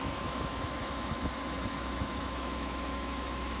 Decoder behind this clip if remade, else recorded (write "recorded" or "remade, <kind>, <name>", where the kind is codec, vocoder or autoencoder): remade, autoencoder, DAC-VAE